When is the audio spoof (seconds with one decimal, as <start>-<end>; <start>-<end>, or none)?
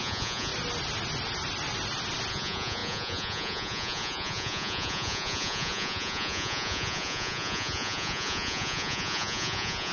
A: 0.0-0.5; 2.3-9.9